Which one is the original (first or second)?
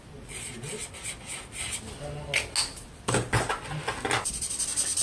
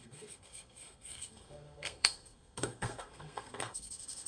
first